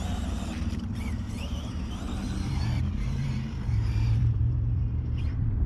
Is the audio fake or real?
fake